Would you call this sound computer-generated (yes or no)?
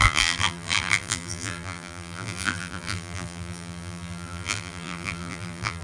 yes